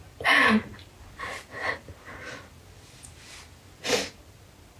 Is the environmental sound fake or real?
real